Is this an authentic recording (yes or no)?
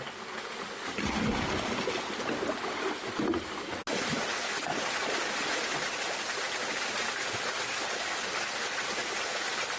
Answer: yes